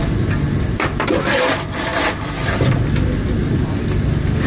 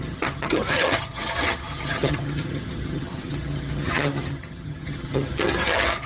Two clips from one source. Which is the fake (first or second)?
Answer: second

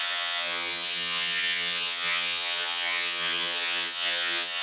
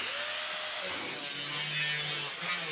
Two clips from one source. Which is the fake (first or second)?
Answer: first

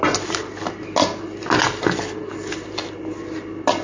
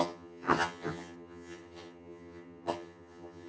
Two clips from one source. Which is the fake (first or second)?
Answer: second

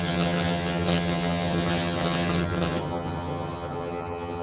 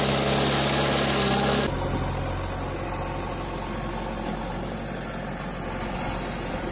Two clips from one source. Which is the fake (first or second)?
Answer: first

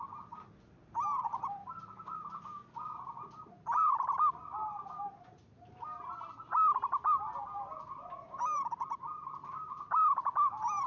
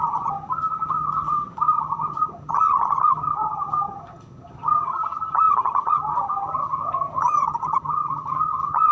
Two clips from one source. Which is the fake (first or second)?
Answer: second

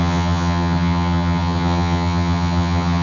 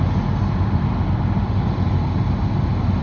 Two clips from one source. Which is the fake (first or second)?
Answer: first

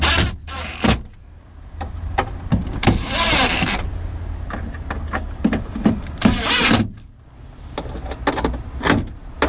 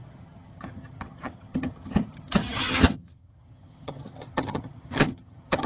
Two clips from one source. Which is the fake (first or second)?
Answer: second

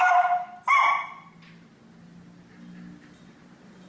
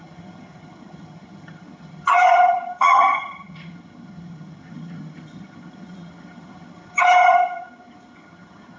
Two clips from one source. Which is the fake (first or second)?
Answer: second